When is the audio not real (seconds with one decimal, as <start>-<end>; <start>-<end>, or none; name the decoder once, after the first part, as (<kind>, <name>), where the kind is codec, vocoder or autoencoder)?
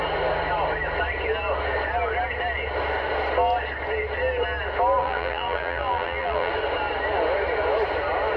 5.0-6.5 (vocoder, BigVGAN v2)